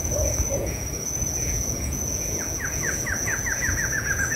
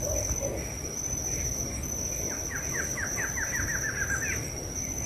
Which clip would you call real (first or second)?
second